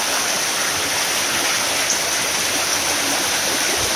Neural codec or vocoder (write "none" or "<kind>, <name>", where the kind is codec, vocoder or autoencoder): none